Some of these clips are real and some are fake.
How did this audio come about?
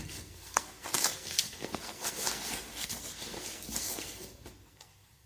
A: fake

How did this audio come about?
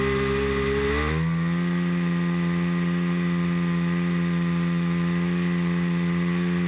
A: real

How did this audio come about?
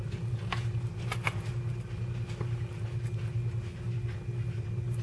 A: real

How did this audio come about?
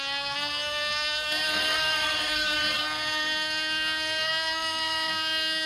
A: fake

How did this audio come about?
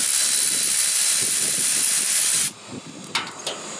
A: real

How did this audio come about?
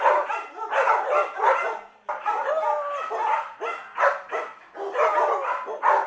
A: real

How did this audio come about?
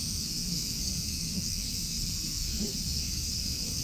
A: fake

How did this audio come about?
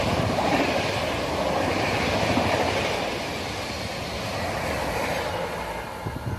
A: real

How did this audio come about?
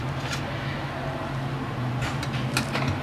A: real